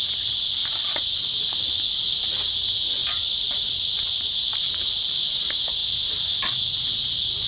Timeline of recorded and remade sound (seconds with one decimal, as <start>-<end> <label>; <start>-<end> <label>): 0.0-0.6 recorded; 0.6-1.3 remade; 1.3-3.0 recorded; 3.0-5.2 remade; 5.2-7.5 recorded